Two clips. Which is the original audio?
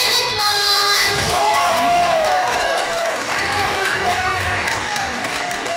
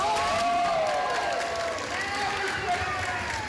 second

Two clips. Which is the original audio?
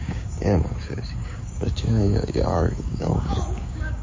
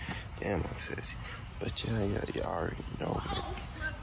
second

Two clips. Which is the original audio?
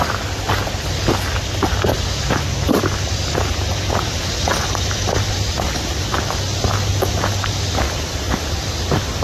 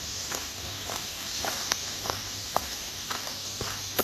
first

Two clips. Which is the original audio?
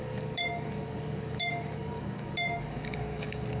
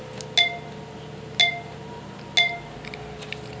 second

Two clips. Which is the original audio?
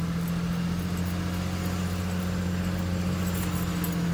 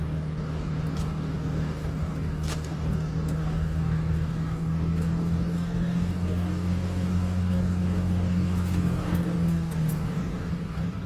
first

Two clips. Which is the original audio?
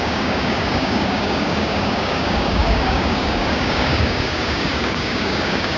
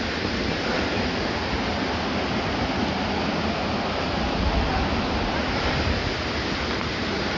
second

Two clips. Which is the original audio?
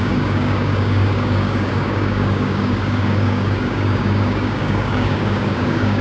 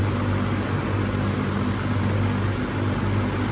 second